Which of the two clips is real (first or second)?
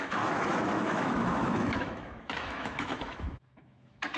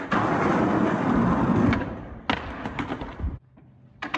second